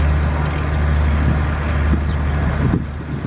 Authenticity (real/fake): real